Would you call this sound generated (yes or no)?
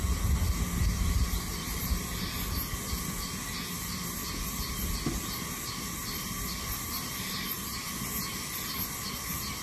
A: no